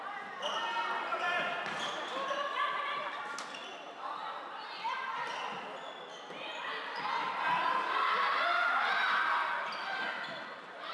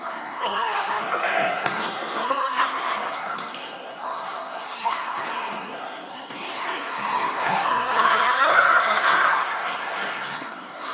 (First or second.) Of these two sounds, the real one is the first